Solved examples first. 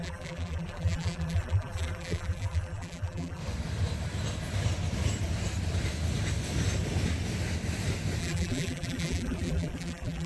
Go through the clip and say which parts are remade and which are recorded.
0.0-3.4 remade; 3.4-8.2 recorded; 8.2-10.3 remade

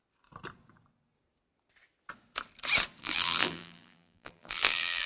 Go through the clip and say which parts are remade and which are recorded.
0.0-3.0 recorded; 3.0-5.1 remade

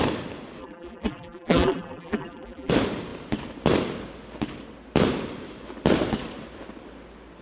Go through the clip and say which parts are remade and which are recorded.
0.0-0.6 recorded; 0.6-2.7 remade; 2.7-7.4 recorded

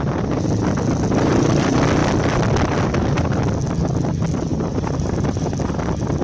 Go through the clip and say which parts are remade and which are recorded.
0.0-4.5 recorded; 4.5-5.5 remade; 5.5-6.2 recorded

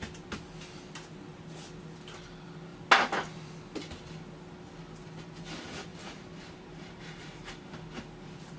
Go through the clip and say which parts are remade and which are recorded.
0.0-5.9 recorded; 5.9-7.5 remade; 7.5-8.6 recorded

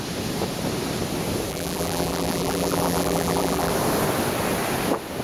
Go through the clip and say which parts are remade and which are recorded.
0.0-1.5 recorded; 1.5-3.7 remade; 3.7-5.2 recorded

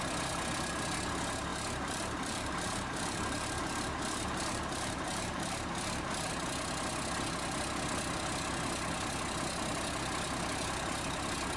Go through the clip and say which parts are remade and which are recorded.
0.0-1.5 recorded; 1.5-6.3 remade; 6.3-11.6 recorded